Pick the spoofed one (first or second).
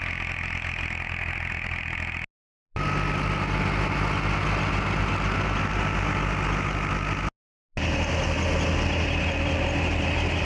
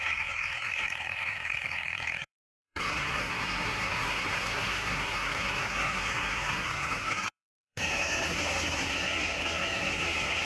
second